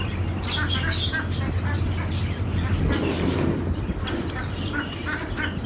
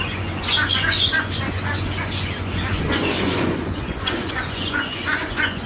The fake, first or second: second